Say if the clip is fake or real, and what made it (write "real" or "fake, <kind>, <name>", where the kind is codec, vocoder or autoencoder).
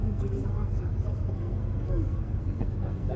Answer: fake, codec, SNAC